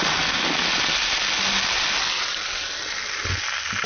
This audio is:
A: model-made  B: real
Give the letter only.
B